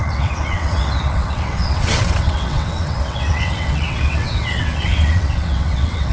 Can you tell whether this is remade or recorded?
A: remade